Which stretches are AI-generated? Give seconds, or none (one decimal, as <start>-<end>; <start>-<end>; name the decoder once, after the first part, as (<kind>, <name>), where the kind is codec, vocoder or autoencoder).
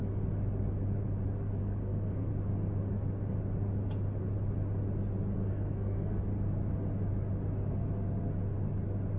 1.6-2.3 (codec, SNAC); 5.4-6.2